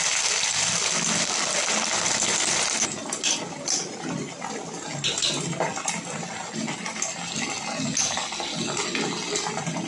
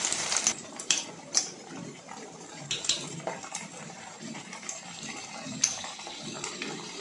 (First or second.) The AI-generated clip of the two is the second